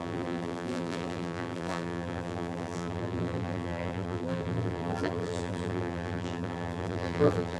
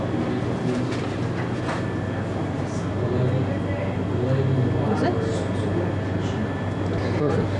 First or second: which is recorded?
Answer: second